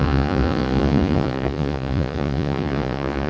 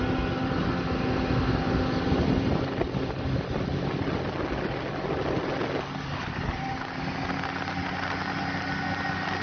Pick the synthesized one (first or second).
first